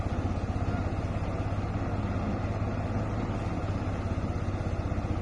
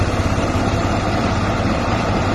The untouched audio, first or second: first